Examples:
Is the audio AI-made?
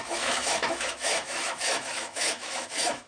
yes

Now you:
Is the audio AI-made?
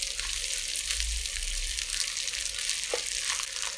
no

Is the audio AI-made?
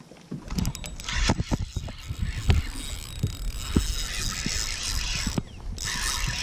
no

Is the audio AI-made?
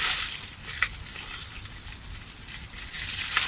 yes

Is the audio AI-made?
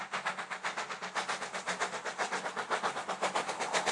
no